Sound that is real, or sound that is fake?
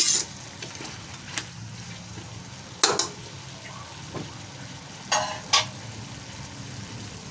real